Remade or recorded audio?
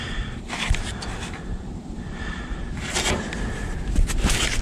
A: remade